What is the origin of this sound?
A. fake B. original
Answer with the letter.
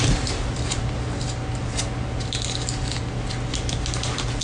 B